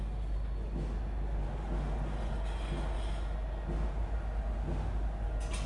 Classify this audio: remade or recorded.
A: recorded